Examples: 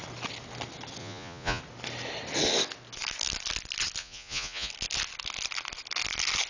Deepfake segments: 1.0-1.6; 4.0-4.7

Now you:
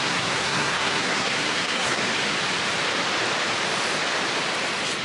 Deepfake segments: 0.0-2.0

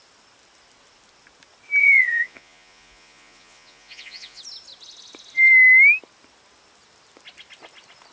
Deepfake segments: 1.8-4.4